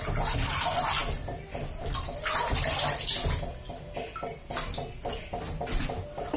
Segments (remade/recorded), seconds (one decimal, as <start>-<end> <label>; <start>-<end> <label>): 0.0-6.4 recorded